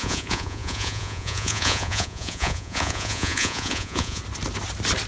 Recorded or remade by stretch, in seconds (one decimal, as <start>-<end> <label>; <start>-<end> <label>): 0.0-4.2 remade; 4.2-5.1 recorded

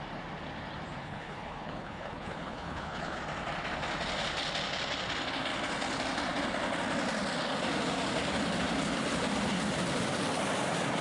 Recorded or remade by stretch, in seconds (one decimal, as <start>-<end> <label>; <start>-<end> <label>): 0.0-1.0 recorded; 1.0-3.2 remade; 3.2-11.0 recorded

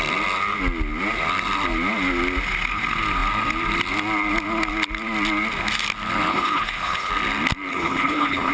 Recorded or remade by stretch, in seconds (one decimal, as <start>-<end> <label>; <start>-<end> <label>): 0.0-6.3 recorded; 6.3-7.1 remade; 7.1-7.7 recorded; 7.7-8.5 remade

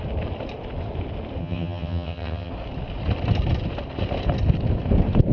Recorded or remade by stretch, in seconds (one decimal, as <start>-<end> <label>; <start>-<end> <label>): 0.0-1.4 recorded; 1.4-2.5 remade; 2.5-5.3 recorded

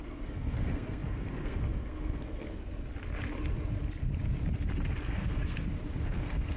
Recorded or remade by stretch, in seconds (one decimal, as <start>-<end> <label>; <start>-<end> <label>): 0.0-2.6 remade; 2.6-5.1 recorded; 5.1-6.6 remade

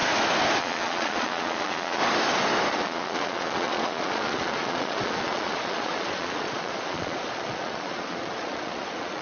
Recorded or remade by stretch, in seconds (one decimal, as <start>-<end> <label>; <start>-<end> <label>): 0.0-0.6 recorded; 0.6-2.0 remade; 2.0-2.7 recorded; 2.7-9.2 remade

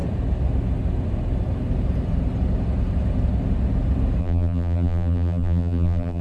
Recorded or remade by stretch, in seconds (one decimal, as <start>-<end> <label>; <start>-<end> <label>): 0.0-4.2 recorded; 4.2-6.2 remade

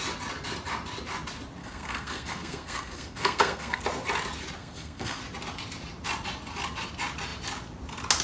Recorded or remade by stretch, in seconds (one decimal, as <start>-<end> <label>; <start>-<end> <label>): 0.0-1.6 recorded; 1.6-3.8 remade; 3.8-4.6 recorded; 4.6-5.2 remade; 5.2-8.2 recorded